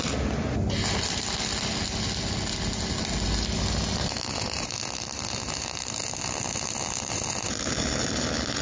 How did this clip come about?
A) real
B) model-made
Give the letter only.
A